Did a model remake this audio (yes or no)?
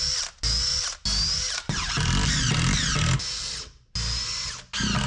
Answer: no